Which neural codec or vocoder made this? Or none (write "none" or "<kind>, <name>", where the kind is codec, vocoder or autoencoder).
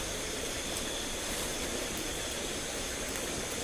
vocoder, BigVGAN v2